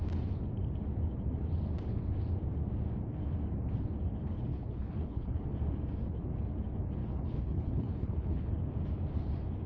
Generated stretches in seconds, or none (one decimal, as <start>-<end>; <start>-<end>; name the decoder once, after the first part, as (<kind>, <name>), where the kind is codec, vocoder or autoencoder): 4.5-5.4 (codec, HILCodec); 7.0-8.5